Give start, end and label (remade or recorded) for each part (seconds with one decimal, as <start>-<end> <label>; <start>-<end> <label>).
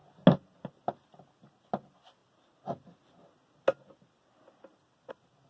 0.0-5.5 recorded